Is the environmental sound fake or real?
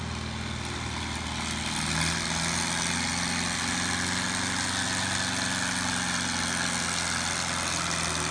real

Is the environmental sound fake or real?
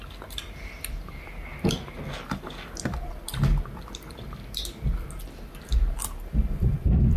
real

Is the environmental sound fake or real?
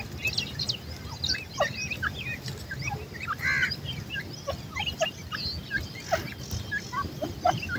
real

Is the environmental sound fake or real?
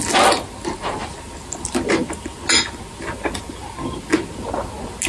real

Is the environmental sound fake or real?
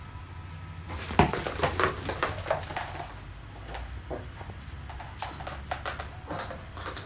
real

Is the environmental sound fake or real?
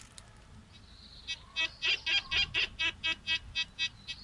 real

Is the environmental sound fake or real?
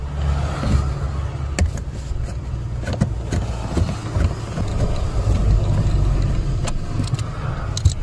real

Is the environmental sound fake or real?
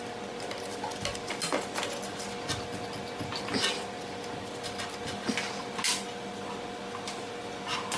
real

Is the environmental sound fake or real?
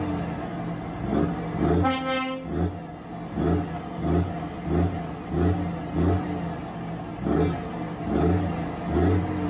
real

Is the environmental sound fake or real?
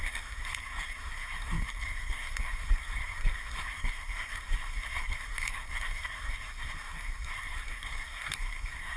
fake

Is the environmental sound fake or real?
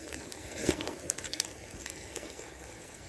fake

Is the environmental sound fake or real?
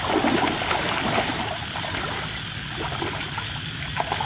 real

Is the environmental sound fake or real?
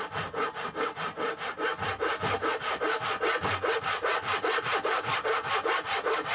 real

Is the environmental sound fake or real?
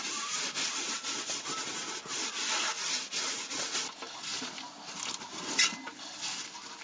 real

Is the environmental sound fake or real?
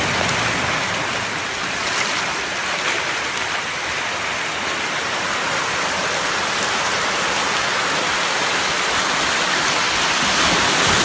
real